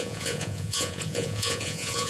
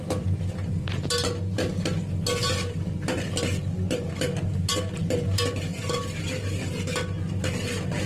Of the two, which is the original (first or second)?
second